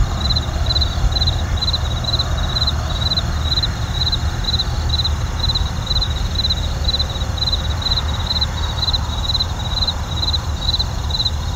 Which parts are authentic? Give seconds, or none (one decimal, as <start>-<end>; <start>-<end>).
1.6-5.6